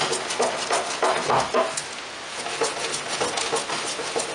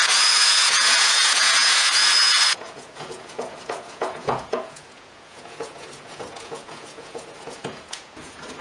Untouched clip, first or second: first